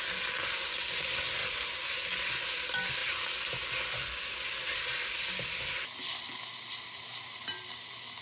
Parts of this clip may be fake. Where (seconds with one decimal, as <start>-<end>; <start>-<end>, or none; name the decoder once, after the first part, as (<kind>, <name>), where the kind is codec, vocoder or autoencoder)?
1.4-2.1 (vocoder, BigVGAN v2)